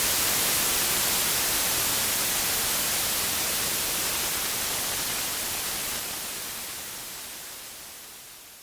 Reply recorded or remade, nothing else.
recorded